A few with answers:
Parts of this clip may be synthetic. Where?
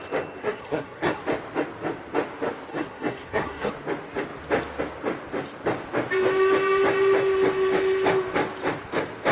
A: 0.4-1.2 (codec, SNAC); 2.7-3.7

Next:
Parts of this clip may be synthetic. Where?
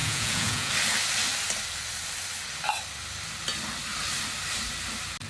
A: 0.0-0.7 (vocoder, Vocos)